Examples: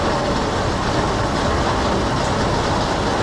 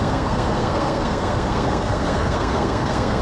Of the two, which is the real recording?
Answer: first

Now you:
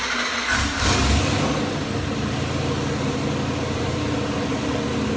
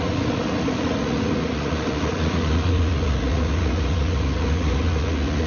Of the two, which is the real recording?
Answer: first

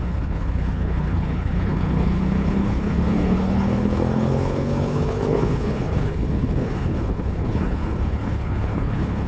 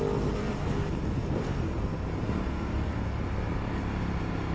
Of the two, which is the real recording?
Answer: second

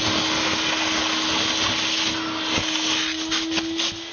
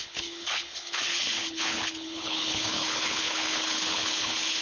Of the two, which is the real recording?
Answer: first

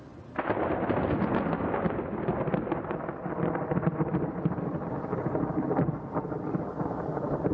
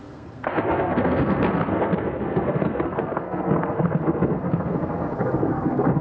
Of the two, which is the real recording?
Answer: first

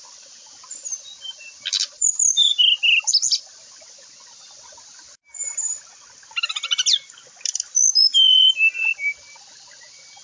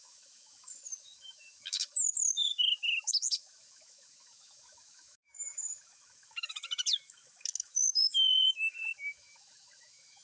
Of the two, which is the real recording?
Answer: first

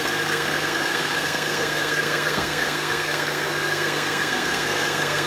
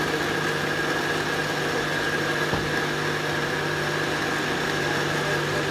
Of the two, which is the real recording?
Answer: second